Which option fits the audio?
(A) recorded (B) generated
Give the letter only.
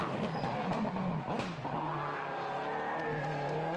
A